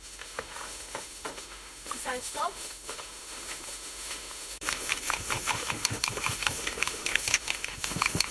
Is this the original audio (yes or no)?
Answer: no